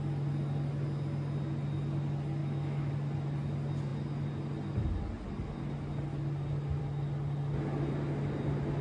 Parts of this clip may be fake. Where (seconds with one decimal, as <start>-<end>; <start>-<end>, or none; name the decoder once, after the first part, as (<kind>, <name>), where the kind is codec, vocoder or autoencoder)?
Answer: 2.4-2.9 (autoencoder, DAC-VAE)